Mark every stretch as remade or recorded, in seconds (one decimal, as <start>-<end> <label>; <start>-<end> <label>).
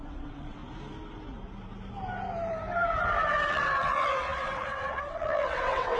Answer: 0.0-0.6 remade; 0.6-3.5 recorded; 3.5-6.0 remade